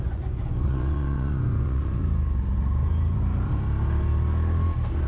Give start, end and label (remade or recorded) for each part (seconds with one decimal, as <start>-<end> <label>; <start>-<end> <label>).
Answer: 0.0-2.0 remade; 2.0-5.1 recorded